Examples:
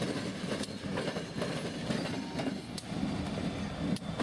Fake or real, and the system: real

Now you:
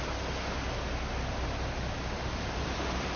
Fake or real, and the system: real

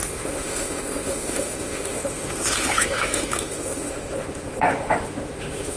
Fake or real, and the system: fake, autoencoder, DAC-VAE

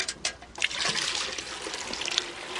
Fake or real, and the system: real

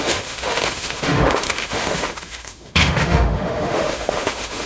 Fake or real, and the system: fake, autoencoder, DAC-VAE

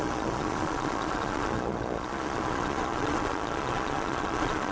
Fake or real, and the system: fake, vocoder, Vocos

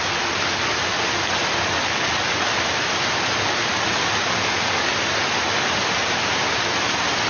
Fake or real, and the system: real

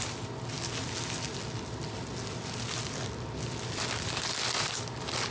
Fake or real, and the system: real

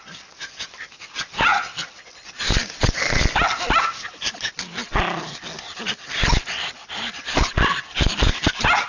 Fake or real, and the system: real